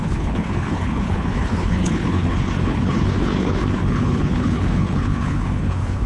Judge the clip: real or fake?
fake